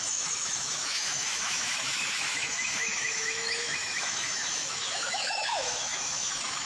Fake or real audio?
fake